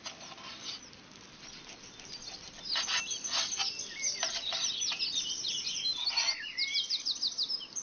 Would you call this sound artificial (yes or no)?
no